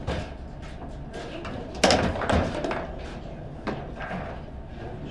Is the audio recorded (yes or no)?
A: yes